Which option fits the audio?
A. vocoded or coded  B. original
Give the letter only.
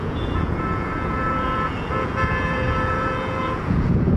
A